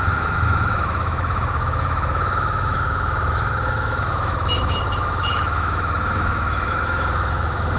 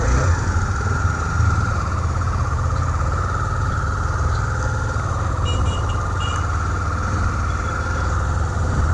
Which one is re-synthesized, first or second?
first